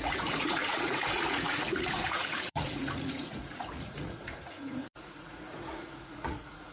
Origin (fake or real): fake